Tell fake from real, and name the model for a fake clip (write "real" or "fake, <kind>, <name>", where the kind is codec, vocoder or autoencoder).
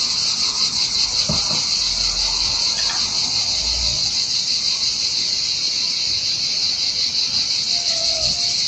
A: real